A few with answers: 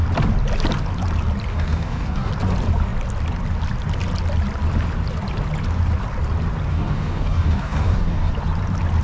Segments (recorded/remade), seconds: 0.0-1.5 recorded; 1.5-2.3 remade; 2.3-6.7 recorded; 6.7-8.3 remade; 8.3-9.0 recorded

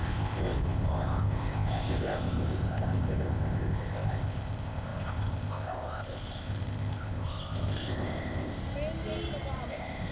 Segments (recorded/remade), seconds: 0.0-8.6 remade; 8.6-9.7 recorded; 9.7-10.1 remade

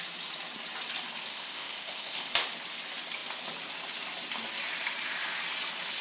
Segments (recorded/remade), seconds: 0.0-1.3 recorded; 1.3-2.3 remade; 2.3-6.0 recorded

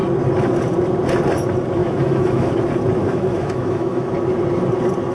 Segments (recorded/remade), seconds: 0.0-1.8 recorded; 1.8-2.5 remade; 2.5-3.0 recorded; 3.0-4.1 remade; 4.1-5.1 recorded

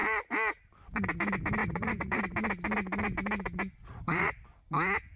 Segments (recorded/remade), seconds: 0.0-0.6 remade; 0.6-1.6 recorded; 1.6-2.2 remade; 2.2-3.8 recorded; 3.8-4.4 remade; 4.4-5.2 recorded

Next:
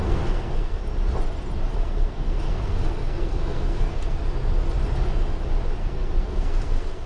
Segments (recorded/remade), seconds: 0.0-0.8 remade; 0.8-1.7 recorded; 1.7-4.2 remade; 4.2-5.8 recorded; 5.8-7.1 remade

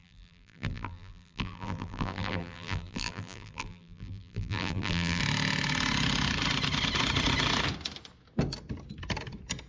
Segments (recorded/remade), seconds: 0.0-5.2 remade; 5.2-9.7 recorded

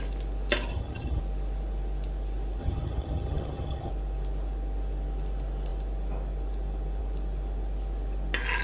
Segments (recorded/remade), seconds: 0.0-0.7 recorded; 0.7-1.2 remade; 1.2-2.6 recorded; 2.6-3.9 remade; 3.9-8.6 recorded